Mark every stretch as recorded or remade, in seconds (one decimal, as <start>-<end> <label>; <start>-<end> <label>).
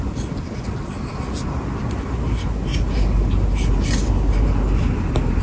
0.0-5.4 recorded